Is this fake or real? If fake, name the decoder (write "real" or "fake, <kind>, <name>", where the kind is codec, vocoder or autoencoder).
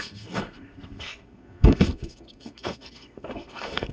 fake, codec, SNAC